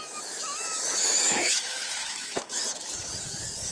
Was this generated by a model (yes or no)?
yes